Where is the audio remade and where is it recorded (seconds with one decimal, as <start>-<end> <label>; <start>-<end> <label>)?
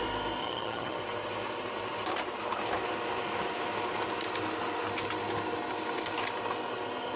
0.0-0.4 recorded; 0.4-1.0 remade; 1.0-7.2 recorded